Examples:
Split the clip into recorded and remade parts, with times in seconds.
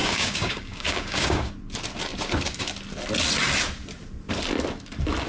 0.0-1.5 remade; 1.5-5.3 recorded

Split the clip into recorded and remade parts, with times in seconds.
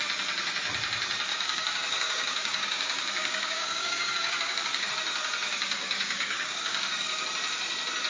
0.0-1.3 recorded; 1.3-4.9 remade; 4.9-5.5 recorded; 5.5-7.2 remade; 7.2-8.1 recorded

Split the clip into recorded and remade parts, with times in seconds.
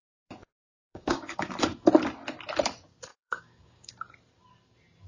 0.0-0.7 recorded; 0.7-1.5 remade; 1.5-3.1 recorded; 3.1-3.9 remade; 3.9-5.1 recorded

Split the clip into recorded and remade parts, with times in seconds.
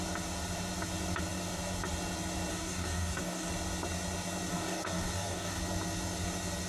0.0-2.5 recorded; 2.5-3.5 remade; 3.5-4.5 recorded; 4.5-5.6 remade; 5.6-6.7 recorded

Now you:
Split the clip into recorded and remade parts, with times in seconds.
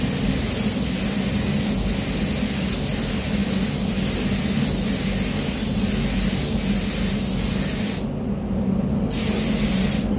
0.0-10.2 recorded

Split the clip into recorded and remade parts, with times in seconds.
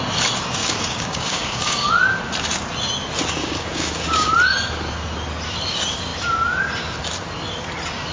0.0-0.6 recorded; 0.6-1.9 remade; 1.9-3.4 recorded; 3.4-4.3 remade; 4.3-8.1 recorded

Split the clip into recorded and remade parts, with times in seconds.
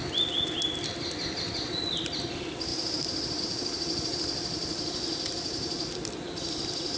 0.0-7.0 recorded